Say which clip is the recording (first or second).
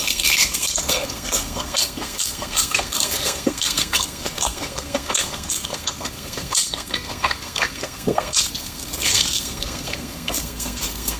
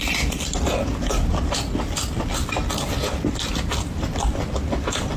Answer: second